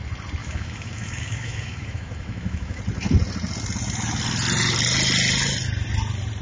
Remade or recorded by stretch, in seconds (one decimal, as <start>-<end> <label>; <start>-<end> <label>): 0.0-0.4 recorded; 0.4-2.8 remade; 2.8-6.4 recorded